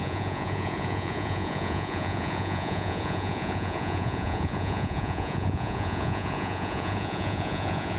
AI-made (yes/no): yes